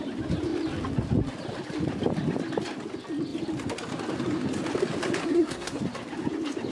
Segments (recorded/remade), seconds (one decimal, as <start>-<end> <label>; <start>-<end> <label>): 0.0-5.2 recorded; 5.2-5.8 remade; 5.8-6.7 recorded